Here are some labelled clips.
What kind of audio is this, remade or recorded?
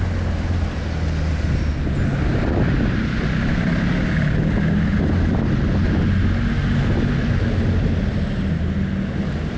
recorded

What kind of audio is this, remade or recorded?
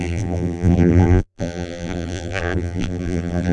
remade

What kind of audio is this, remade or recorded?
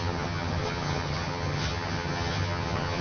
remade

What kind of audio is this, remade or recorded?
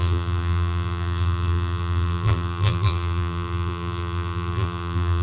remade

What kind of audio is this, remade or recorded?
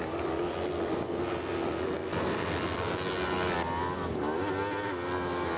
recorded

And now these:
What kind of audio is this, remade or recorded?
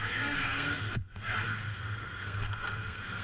remade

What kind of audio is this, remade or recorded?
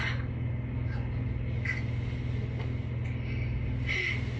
recorded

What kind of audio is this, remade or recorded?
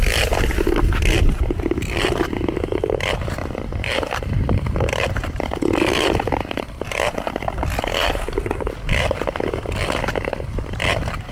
recorded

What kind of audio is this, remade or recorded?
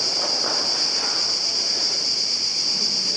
recorded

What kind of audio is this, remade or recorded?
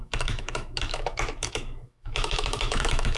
remade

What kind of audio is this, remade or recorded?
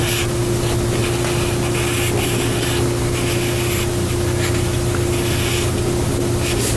recorded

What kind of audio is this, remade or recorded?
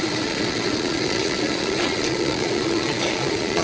remade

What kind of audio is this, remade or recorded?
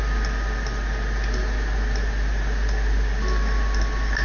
recorded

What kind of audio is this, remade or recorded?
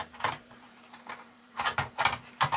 remade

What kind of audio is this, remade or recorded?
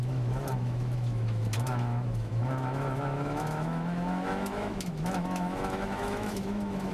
remade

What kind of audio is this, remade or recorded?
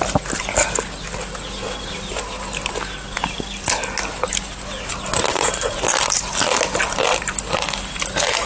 recorded